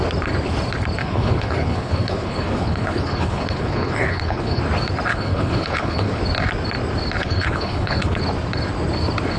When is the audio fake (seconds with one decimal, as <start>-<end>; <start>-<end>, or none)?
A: 1.0-4.6; 5.1-6.2; 7.2-8.2